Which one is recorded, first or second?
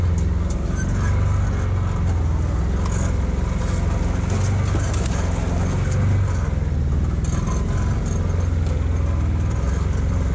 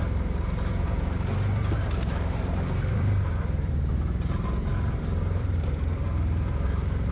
first